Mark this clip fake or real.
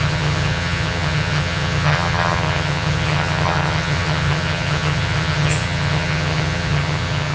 fake